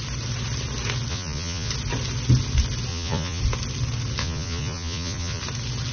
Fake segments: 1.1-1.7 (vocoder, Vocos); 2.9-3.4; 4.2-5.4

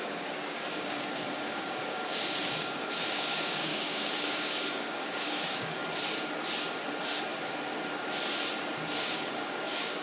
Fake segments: 0.0-5.8 (codec, DAC); 9.0-10.0

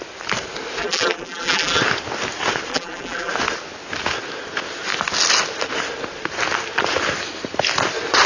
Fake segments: 0.8-1.8 (vocoder, BigVGAN v2); 2.7-3.3